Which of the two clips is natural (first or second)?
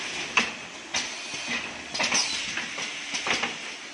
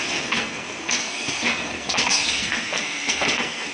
first